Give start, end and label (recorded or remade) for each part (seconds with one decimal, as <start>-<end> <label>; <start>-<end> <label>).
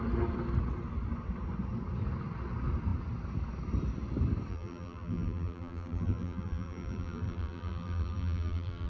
0.0-4.5 recorded; 4.5-8.9 remade